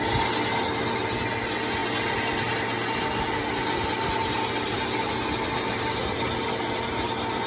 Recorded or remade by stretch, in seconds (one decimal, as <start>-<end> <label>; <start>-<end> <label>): 0.0-7.5 recorded